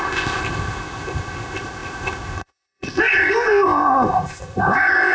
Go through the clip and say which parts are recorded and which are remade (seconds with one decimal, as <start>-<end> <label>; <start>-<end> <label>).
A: 0.0-5.1 remade